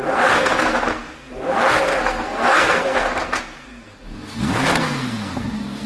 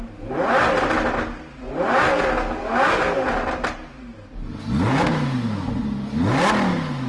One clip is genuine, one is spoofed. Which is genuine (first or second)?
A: second